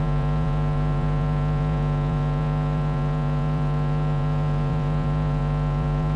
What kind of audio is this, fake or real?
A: fake